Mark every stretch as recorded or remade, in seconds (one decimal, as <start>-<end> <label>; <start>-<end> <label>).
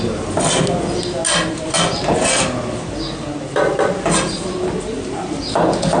0.0-6.0 recorded